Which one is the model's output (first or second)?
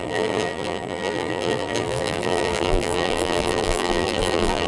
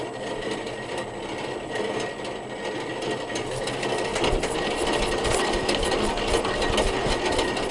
first